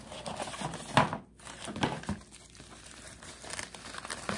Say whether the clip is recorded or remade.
recorded